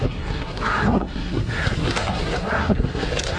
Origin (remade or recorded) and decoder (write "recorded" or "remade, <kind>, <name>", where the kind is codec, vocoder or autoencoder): remade, codec, SNAC